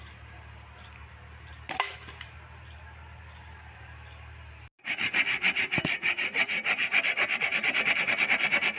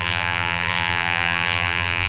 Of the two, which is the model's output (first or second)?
second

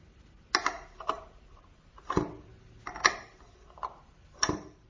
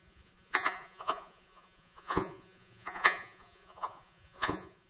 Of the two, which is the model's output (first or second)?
second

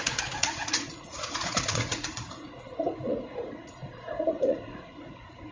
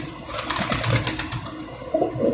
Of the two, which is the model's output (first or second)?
first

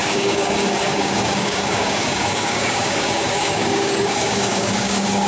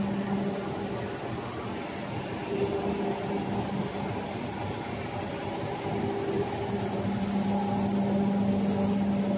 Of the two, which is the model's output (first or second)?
first